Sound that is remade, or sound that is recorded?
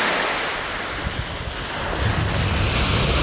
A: recorded